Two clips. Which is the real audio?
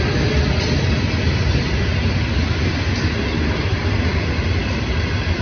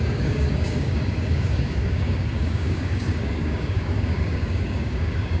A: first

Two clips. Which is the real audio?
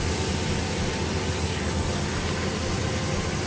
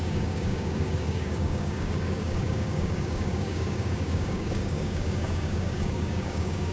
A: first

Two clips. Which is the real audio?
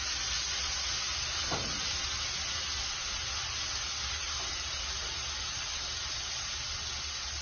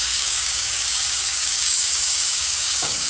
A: first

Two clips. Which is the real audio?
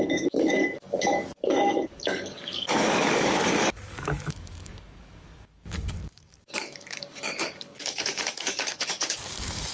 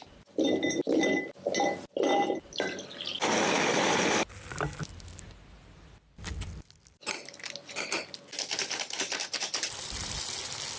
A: second